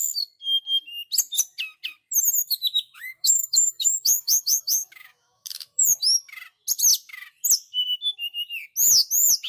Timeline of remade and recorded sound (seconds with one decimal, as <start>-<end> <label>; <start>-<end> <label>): 0.0-2.4 recorded; 2.4-6.0 remade; 6.0-9.5 recorded